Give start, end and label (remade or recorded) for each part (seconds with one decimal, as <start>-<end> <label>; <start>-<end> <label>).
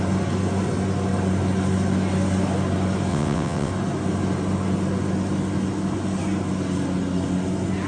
0.0-3.1 recorded; 3.1-3.7 remade; 3.7-7.9 recorded